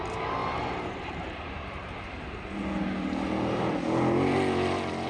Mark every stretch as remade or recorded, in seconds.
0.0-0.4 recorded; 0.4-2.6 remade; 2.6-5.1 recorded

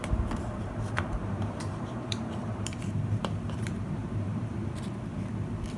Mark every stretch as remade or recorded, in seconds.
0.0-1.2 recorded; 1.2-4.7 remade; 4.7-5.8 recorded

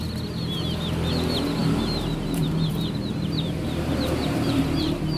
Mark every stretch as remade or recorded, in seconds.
0.0-1.6 recorded; 1.6-4.6 remade; 4.6-5.2 recorded

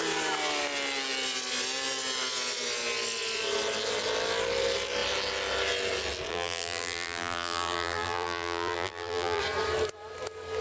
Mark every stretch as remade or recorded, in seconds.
0.0-6.3 recorded; 6.3-9.4 remade; 9.4-10.6 recorded